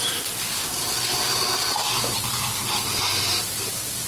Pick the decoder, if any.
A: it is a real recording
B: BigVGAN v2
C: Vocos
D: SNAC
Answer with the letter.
A